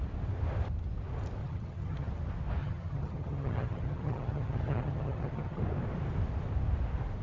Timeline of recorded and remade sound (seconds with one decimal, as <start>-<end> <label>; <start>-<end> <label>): 0.0-1.4 recorded; 1.4-2.1 remade; 2.1-2.6 recorded; 2.6-5.6 remade; 5.6-7.2 recorded